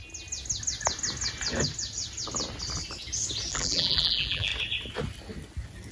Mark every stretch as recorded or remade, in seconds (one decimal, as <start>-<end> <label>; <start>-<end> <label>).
0.0-3.5 recorded; 3.5-4.5 remade; 4.5-5.9 recorded